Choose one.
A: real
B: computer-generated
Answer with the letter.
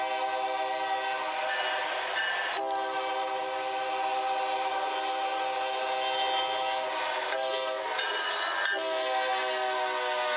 A